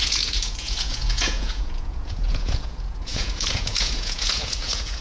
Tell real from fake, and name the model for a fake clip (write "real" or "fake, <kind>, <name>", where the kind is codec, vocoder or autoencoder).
fake, vocoder, Vocos